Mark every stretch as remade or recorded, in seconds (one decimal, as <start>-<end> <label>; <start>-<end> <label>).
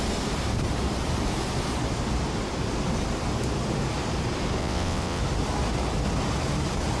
0.0-4.6 recorded; 4.6-5.2 remade; 5.2-7.0 recorded